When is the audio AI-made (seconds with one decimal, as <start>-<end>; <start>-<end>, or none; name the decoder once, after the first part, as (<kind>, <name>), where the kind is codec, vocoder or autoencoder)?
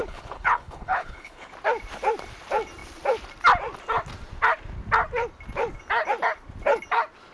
0.0-1.5 (codec, HILCodec)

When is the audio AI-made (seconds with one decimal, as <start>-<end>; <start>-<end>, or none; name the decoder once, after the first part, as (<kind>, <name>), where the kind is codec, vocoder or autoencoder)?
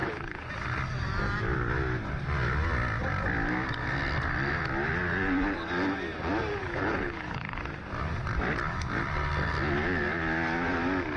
0.0-0.5 (codec, HILCodec); 6.6-7.6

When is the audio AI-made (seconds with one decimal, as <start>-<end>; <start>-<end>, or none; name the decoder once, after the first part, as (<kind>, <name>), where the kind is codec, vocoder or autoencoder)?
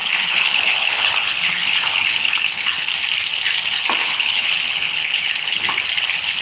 0.0-2.9 (codec, HILCodec); 4.0-5.8